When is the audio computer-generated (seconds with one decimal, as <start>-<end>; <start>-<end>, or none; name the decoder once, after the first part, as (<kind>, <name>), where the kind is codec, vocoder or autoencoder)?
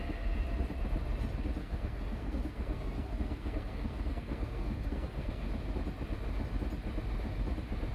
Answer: 1.6-5.5 (codec, SNAC)